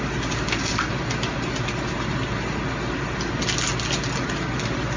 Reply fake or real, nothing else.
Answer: real